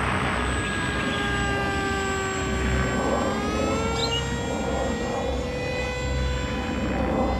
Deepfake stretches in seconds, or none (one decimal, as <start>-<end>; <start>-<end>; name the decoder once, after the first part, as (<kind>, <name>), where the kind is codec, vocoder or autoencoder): none